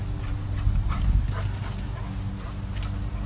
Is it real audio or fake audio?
real